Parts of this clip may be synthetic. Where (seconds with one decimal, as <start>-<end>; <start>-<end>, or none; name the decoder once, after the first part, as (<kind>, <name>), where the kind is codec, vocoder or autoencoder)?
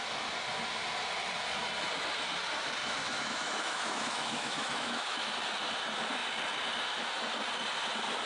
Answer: 2.8-5.3 (autoencoder, DAC-VAE)